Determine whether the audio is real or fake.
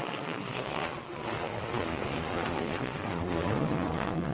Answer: fake